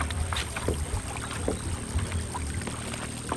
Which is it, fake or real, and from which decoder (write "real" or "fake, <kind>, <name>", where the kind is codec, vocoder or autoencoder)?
real